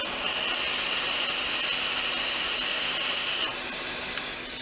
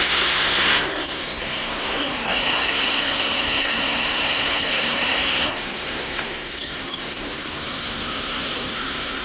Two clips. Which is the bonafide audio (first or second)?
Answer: first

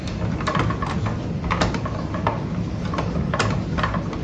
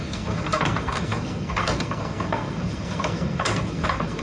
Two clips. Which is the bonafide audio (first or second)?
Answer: first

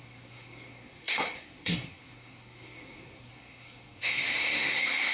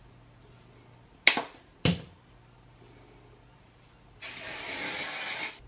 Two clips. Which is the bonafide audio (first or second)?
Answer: second